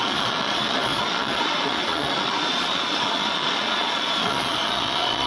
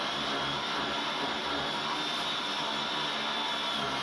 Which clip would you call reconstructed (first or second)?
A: first